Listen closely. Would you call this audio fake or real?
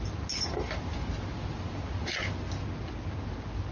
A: real